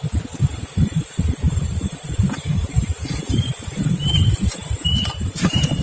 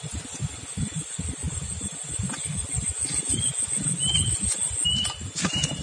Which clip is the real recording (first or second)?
second